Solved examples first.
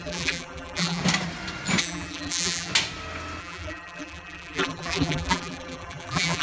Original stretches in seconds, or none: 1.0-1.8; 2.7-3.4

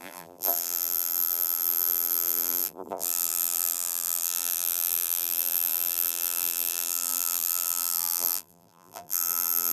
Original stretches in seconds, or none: none

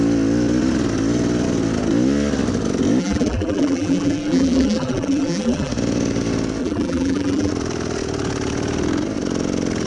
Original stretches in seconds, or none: 0.0-3.0; 5.7-6.6; 7.5-9.9

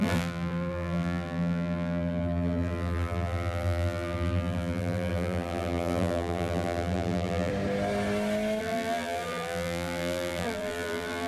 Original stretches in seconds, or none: 7.5-8.6

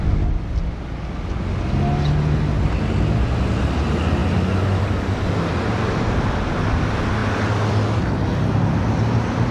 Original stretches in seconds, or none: 0.0-4.2; 5.0-7.2; 8.1-9.5

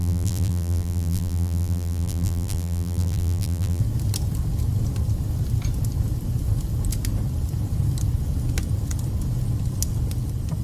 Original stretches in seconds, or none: 3.8-10.6

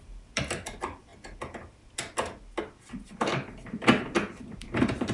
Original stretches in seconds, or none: 1.1-2.6; 3.3-3.8

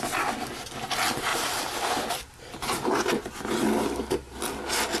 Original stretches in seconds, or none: 0.0-1.3; 3.5-5.0